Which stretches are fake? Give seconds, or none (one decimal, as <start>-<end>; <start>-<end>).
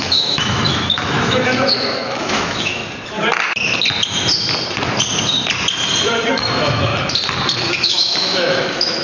0.0-2.8; 6.3-6.9; 7.7-9.0